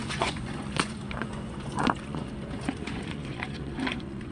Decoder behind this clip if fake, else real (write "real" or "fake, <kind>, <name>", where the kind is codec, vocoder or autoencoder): fake, vocoder, Vocos